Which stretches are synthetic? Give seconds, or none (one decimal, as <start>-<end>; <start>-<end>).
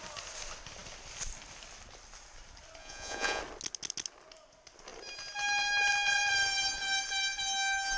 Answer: 2.8-3.4